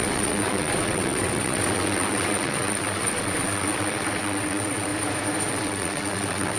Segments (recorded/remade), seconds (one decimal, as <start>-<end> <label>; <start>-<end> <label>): 0.0-4.9 remade; 4.9-5.5 recorded; 5.5-6.6 remade